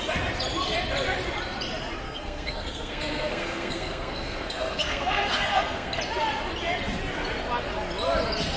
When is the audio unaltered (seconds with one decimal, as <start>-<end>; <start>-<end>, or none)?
0.0-2.0; 6.0-8.6